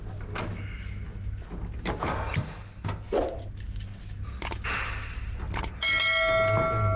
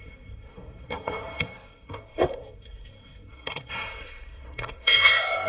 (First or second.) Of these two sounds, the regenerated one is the second